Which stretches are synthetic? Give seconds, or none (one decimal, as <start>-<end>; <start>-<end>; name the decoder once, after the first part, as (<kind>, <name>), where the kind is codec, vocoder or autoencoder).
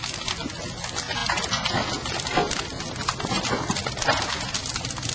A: none